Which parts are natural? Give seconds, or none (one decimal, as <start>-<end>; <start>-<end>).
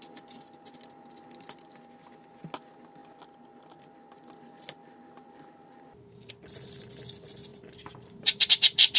0.0-4.8; 6.3-7.5; 8.5-9.0